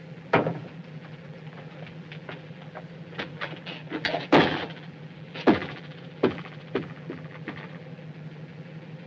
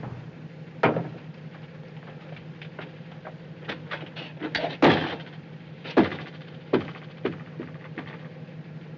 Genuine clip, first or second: second